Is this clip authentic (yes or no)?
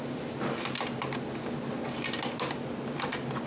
yes